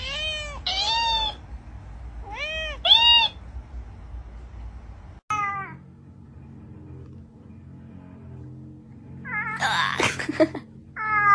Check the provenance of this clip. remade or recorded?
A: recorded